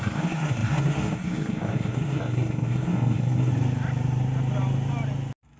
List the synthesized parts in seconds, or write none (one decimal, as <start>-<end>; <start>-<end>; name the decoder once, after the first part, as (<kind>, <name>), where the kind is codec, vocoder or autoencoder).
0.0-3.5 (codec, SNAC)